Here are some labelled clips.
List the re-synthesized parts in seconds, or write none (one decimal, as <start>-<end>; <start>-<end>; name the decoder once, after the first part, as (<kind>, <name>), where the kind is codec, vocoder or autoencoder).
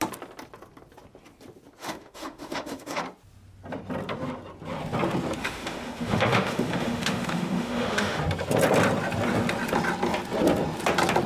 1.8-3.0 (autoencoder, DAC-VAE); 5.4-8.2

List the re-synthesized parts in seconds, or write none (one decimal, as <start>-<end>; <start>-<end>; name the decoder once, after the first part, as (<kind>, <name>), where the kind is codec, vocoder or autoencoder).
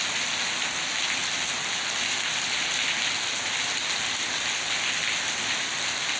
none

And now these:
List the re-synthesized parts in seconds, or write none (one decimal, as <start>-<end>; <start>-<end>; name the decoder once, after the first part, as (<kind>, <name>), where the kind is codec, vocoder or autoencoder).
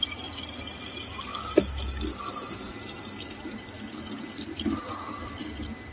none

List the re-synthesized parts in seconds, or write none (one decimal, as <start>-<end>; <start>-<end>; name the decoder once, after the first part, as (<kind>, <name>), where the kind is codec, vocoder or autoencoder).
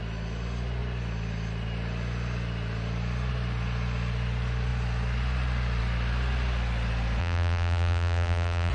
7.2-8.7 (vocoder, BigVGAN v2)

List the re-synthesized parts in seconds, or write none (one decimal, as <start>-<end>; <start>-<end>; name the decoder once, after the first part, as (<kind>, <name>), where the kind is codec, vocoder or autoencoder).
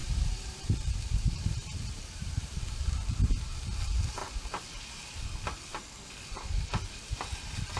0.0-2.8 (vocoder, BigVGAN v2); 4.2-4.8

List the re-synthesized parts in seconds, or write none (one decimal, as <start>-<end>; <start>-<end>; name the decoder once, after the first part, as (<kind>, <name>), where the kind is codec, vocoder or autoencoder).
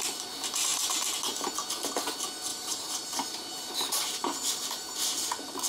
2.5-5.7 (vocoder, BigVGAN v2)